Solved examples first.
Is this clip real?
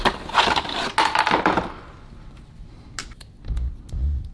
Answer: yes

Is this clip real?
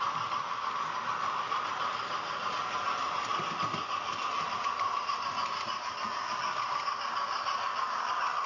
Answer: yes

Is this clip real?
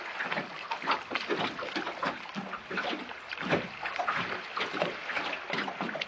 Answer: yes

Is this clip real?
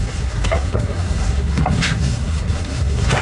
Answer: no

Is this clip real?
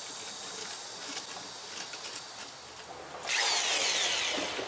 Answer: yes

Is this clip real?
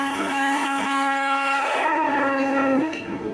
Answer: no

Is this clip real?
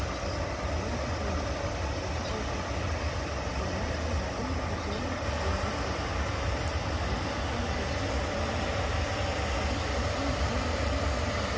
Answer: yes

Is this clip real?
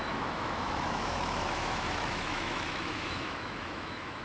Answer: no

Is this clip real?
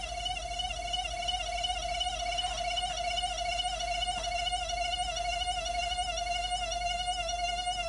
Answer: yes